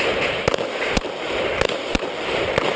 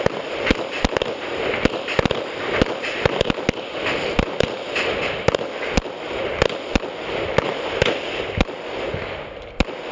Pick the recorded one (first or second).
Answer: second